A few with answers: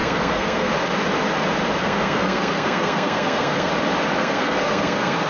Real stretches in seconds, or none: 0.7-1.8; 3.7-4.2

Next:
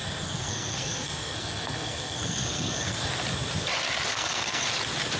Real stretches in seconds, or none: 3.1-4.1; 4.7-5.2